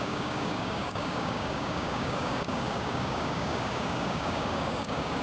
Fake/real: fake